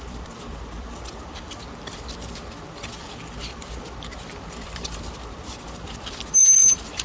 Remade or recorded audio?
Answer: remade